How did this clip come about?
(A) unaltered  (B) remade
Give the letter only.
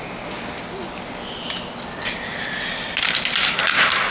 A